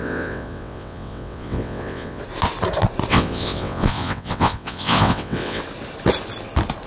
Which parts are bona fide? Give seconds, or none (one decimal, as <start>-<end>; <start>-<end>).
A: 2.2-3.1; 5.6-6.9